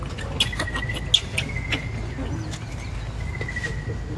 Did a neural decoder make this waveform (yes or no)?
no